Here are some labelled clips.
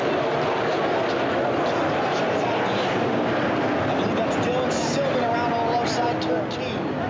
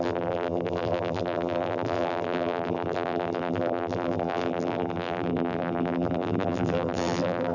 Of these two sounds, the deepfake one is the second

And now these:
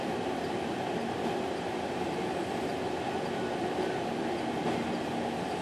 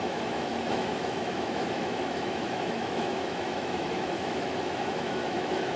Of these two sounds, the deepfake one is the second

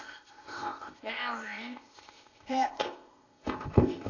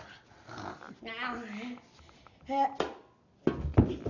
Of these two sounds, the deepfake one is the first